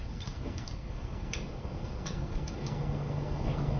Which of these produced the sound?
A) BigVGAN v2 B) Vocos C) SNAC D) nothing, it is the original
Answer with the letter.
C